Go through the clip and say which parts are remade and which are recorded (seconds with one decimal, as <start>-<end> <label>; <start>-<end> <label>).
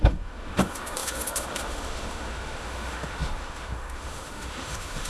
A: 0.0-5.1 remade